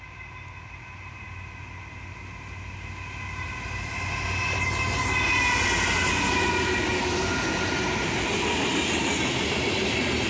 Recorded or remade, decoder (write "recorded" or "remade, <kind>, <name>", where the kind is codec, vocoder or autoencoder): recorded